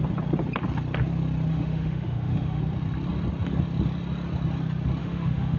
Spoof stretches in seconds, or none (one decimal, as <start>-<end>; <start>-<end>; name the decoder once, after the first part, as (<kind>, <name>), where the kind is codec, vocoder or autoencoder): 1.5-2.6 (autoencoder, DAC-VAE); 5.0-5.6